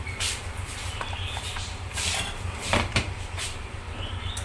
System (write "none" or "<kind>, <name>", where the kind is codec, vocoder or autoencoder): vocoder, BigVGAN v2